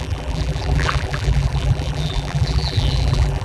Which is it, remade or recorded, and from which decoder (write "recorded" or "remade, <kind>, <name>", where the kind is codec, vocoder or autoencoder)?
remade, vocoder, BigVGAN v2